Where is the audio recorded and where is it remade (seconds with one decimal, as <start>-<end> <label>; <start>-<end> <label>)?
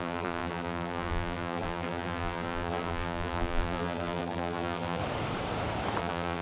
0.0-5.0 remade; 5.0-6.0 recorded; 6.0-6.4 remade